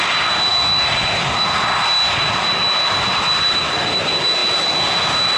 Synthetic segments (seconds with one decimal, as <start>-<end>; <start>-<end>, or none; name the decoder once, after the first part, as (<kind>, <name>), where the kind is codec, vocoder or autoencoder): none